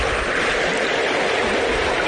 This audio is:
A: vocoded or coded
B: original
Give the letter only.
B